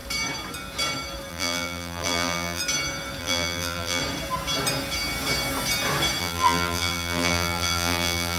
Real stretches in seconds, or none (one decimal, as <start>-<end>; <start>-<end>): 0.0-1.3; 2.6-3.2; 4.0-6.2